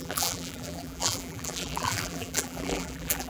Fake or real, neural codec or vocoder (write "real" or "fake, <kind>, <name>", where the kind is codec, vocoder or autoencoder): fake, vocoder, BigVGAN v2